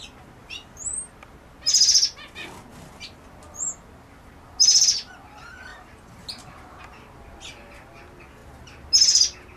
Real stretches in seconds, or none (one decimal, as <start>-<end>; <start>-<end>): 0.0-0.4; 1.1-5.7; 6.8-9.6